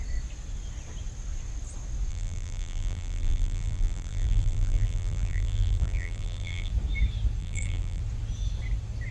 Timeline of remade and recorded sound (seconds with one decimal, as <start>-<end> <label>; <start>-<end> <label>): 0.0-2.1 recorded; 2.1-6.7 remade; 6.7-7.4 recorded; 7.4-8.0 remade; 8.0-9.1 recorded